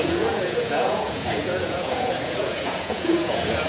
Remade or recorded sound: remade